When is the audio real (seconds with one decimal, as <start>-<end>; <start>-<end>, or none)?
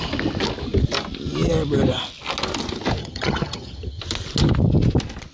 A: 0.0-3.0; 4.0-5.3